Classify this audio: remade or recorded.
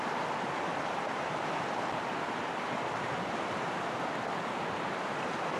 remade